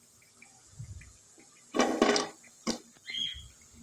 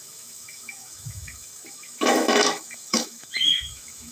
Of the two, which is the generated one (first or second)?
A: second